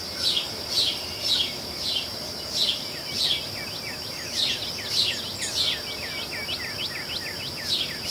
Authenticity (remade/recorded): recorded